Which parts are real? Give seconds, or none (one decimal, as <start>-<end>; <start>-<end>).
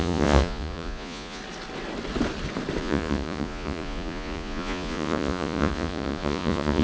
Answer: 1.4-2.8